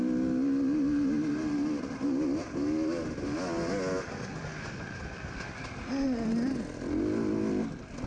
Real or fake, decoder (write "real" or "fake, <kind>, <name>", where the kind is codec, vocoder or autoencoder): real